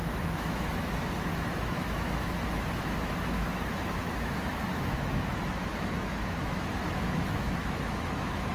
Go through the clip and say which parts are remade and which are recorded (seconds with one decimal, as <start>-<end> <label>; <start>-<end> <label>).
0.0-8.5 remade